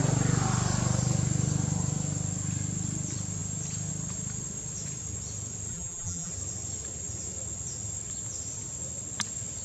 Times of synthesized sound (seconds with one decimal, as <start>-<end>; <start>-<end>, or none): 5.7-6.3